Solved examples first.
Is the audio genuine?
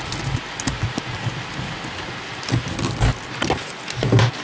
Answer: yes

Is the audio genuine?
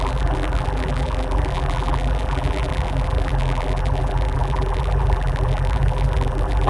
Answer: no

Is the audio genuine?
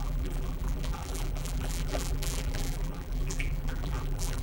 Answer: no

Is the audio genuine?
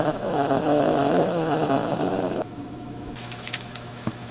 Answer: no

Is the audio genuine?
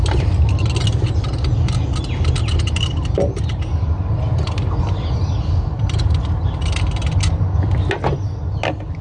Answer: yes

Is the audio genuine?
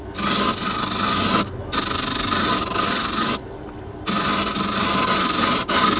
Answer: yes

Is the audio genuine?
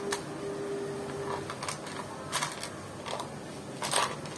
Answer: yes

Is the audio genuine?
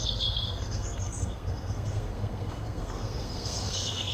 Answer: no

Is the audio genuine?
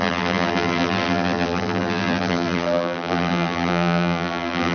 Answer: no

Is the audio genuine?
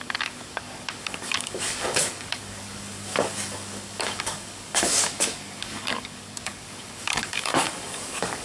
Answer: no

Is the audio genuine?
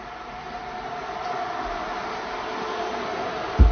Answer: yes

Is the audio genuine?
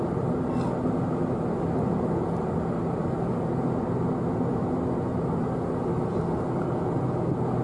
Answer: yes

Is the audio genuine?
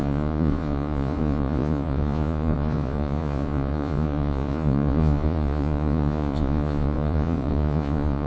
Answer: no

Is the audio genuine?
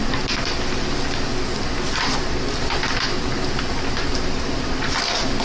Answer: yes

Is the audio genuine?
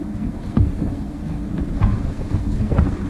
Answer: no